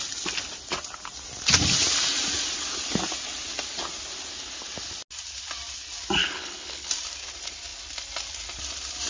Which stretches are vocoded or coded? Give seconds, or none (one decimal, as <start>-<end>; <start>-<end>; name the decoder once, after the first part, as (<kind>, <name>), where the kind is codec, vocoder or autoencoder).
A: 6.2-6.9 (codec, HILCodec)